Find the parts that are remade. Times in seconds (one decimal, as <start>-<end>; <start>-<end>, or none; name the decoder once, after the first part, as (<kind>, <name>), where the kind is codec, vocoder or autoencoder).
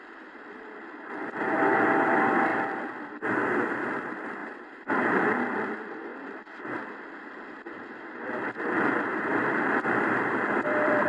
0.0-11.1 (vocoder, BigVGAN v2)